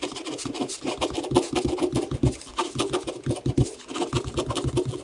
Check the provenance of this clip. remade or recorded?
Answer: recorded